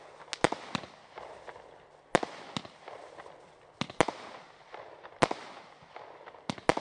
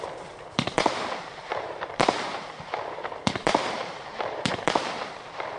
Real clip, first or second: first